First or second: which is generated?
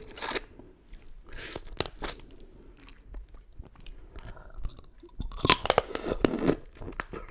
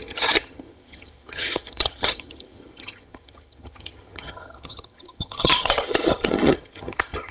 second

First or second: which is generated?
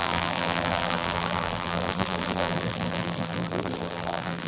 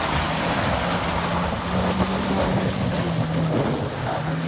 first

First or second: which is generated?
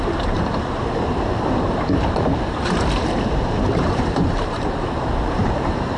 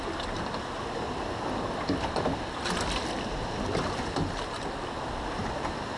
first